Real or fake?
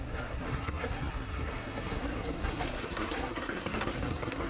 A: fake